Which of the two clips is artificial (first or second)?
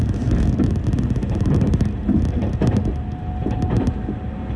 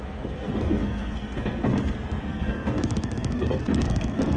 second